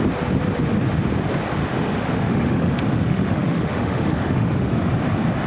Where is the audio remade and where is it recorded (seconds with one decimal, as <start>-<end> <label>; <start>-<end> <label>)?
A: 0.0-1.6 recorded; 1.6-4.9 remade; 4.9-5.5 recorded